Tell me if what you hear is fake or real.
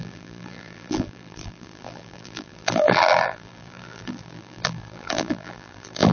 fake